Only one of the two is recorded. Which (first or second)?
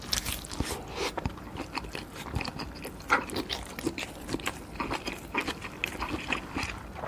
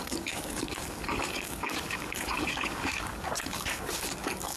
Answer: first